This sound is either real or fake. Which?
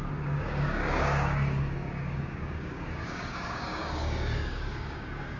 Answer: fake